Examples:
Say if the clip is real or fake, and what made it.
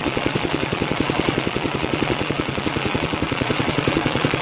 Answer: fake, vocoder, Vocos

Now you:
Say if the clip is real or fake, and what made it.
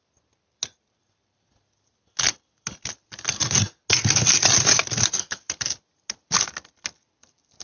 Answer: real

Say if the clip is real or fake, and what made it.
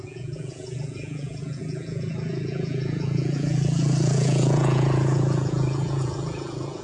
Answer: fake, vocoder, Vocos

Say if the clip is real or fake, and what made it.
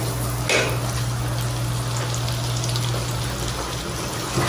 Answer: real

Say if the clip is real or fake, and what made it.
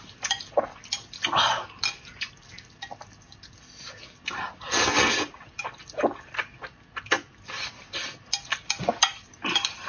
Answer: real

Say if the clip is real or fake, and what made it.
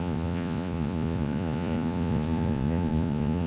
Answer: fake, vocoder, Vocos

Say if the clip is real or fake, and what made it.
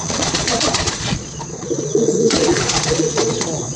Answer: fake, vocoder, Vocos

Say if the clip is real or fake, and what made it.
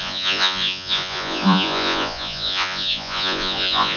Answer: fake, vocoder, Vocos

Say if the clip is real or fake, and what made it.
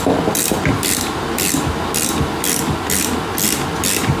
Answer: real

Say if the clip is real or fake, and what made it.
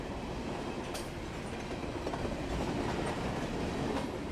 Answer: real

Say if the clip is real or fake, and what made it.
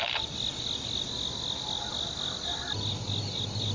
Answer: real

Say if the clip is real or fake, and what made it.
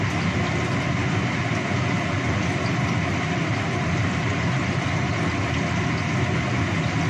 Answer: real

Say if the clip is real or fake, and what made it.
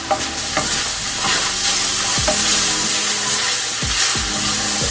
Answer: real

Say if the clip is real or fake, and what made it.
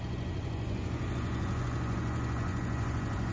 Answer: fake, vocoder, Vocos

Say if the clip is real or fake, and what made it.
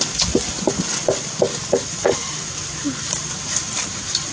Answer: real